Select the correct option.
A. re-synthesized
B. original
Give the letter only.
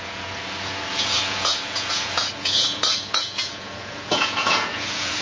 A